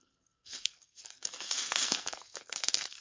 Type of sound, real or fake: fake